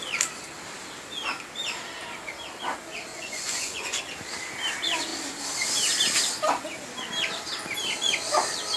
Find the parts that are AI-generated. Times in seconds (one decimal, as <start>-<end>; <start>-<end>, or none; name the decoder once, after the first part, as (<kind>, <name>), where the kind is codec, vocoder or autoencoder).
3.1-4.0 (vocoder, Vocos)